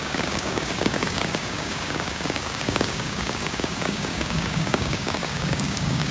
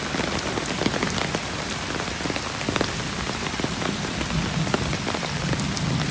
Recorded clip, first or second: second